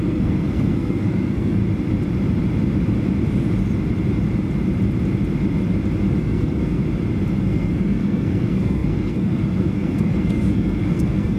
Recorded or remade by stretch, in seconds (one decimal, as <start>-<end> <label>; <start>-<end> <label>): 0.0-1.6 remade; 1.6-6.2 recorded; 6.2-6.8 remade; 6.8-7.4 recorded; 7.4-11.4 remade

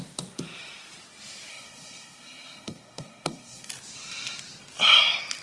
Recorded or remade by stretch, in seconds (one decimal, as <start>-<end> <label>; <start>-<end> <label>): 0.0-1.5 recorded; 1.5-3.7 remade; 3.7-5.4 recorded

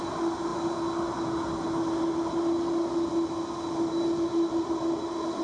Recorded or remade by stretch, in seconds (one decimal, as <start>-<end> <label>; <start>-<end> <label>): 0.0-5.4 recorded